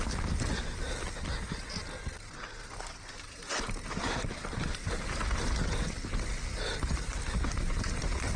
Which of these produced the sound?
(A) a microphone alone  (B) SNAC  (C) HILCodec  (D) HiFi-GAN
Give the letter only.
A